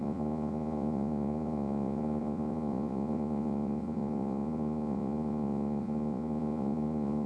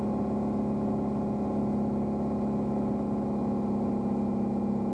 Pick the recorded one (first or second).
second